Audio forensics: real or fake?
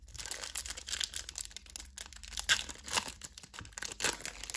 real